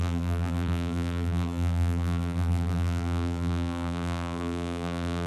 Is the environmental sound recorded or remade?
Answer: remade